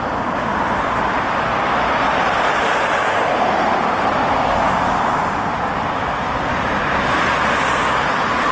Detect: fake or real real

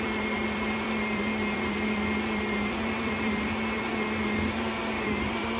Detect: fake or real fake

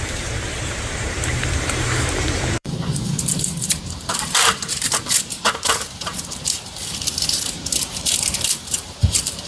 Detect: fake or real fake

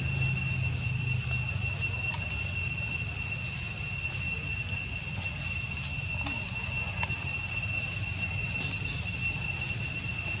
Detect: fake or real real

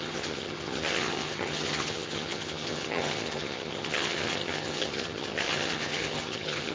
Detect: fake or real fake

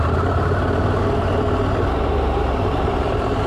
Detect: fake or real fake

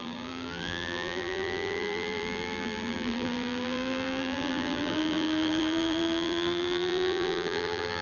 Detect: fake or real fake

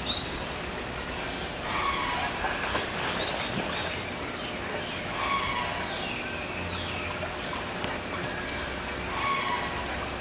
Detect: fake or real real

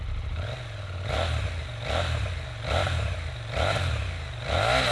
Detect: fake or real real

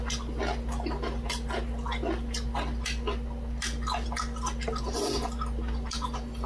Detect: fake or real real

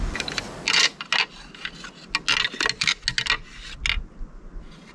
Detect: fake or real real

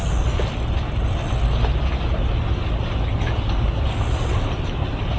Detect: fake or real real